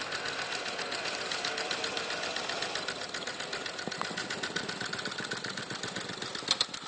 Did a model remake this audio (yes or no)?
no